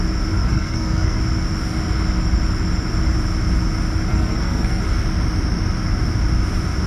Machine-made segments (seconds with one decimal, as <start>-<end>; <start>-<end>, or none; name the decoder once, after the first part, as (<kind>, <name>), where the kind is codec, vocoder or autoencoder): 0.4-1.2 (codec, SNAC); 4.1-4.8